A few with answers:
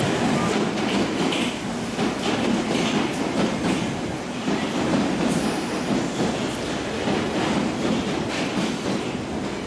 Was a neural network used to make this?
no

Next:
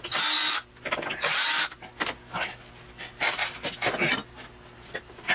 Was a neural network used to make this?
no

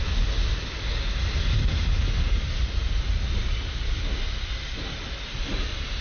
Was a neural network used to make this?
no